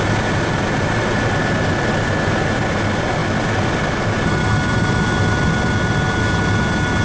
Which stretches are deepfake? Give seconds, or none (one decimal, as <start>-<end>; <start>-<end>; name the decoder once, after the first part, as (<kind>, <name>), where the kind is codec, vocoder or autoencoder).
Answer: none